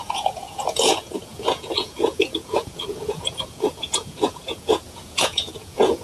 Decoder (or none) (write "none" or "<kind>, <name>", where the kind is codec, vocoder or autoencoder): vocoder, Vocos